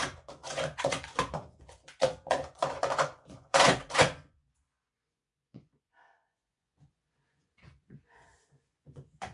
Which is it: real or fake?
fake